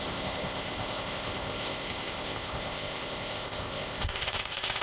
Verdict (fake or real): fake